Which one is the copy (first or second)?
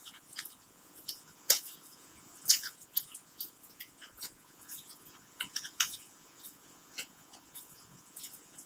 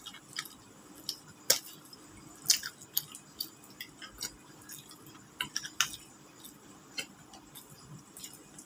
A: first